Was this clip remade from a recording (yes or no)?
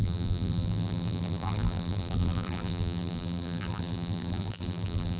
yes